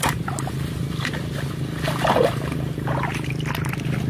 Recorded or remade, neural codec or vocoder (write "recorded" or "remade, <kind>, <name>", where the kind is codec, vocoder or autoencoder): recorded